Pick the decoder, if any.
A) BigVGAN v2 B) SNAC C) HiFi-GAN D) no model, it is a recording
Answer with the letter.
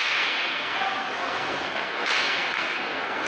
B